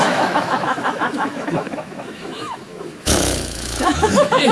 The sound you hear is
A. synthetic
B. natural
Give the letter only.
A